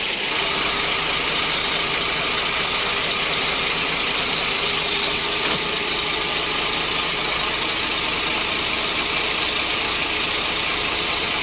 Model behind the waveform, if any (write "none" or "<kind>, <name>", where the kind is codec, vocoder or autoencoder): vocoder, BigVGAN v2